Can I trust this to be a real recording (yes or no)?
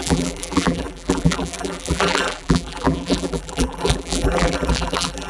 no